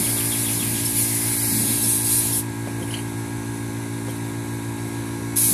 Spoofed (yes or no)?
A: no